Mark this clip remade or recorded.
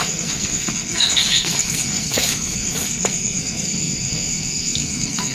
remade